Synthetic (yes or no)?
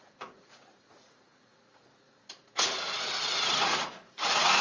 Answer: yes